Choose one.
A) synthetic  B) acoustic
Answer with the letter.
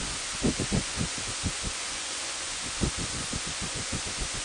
A